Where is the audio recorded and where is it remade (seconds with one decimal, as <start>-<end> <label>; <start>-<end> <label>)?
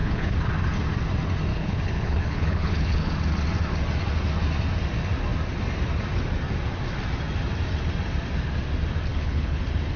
0.0-0.5 remade; 0.5-1.5 recorded; 1.5-3.1 remade; 3.1-9.1 recorded; 9.1-9.6 remade; 9.6-10.0 recorded